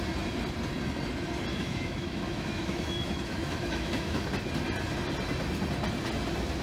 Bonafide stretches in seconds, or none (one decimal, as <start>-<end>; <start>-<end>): 0.0-1.5; 4.3-6.6